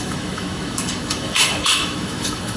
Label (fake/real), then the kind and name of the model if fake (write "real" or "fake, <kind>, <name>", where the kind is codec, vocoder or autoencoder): fake, autoencoder, DAC-VAE